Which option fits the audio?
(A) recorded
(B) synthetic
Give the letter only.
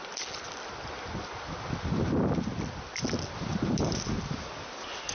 A